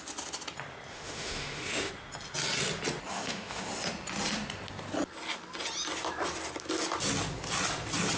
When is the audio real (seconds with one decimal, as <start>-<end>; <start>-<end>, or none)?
0.0-0.9; 1.9-3.1; 3.7-8.2